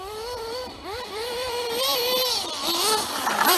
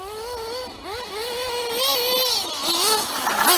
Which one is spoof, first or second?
first